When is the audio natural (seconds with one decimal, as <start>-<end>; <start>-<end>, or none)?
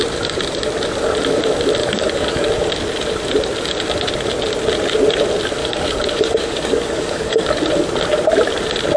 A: 0.0-1.8; 2.5-5.6; 7.6-9.0